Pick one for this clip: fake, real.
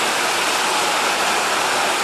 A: real